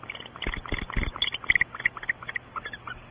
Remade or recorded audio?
recorded